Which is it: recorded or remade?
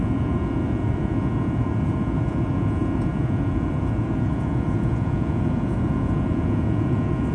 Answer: remade